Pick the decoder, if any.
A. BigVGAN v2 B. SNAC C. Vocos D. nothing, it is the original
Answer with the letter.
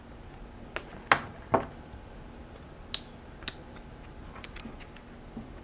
D